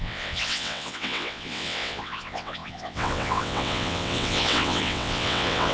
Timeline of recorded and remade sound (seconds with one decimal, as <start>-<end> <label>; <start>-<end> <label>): 0.0-5.7 remade